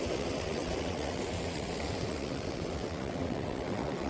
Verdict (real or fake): fake